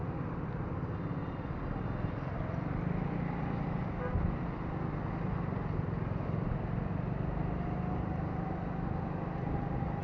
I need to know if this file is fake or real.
real